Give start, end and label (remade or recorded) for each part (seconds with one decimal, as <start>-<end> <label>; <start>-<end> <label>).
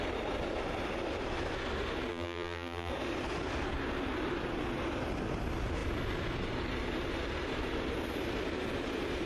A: 0.0-2.1 recorded; 2.1-2.9 remade; 2.9-9.3 recorded